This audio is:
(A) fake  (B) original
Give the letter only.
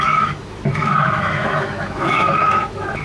A